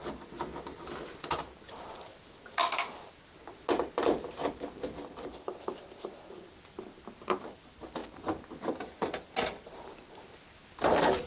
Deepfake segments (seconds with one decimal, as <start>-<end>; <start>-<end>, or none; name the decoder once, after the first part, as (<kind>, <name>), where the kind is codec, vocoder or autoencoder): none